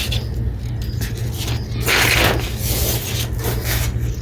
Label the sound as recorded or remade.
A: recorded